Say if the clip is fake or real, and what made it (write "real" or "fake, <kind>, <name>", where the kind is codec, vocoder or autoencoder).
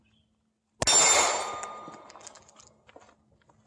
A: real